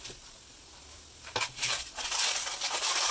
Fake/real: real